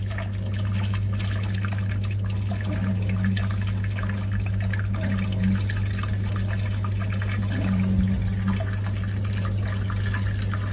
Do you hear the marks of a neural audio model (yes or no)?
no